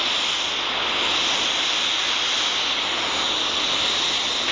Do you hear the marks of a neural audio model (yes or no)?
no